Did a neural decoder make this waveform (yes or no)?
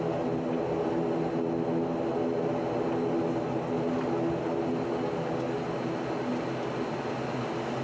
no